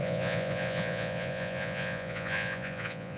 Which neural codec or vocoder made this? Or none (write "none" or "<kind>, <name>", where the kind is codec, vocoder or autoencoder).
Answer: vocoder, Vocos